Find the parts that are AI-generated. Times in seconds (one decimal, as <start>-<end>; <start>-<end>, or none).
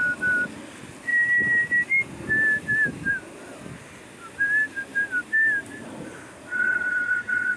6.5-7.6